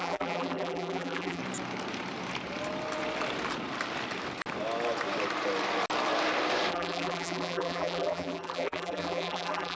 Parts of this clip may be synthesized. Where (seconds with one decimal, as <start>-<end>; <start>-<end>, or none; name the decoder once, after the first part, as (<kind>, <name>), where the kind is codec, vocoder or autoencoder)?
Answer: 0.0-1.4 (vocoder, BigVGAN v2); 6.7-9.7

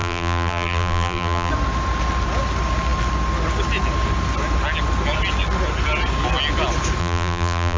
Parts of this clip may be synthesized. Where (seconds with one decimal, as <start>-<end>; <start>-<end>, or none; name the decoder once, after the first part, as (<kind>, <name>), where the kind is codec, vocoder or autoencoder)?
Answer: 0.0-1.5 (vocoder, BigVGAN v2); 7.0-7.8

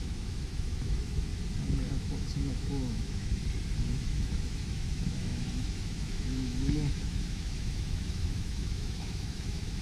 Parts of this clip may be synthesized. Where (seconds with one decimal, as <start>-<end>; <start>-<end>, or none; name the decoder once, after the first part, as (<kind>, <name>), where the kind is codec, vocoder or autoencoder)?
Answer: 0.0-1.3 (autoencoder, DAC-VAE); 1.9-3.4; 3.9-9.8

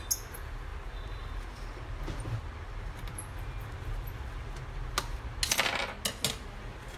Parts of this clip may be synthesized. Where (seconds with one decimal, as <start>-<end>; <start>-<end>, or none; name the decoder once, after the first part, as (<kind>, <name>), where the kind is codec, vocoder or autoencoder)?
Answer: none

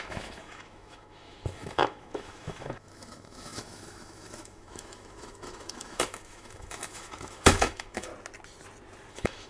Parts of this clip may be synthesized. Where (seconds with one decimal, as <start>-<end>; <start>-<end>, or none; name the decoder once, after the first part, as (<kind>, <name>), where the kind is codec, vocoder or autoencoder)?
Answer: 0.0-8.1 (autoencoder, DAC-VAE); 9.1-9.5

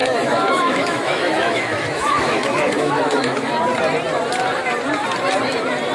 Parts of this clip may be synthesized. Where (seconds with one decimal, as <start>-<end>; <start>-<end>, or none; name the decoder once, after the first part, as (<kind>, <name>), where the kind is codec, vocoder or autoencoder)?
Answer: 0.0-3.5 (autoencoder, DAC-VAE)

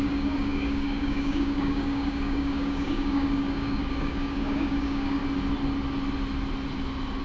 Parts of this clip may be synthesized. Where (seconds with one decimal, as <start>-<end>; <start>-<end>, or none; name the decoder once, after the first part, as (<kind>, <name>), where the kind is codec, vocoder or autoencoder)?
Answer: 0.0-5.2 (codec, DAC)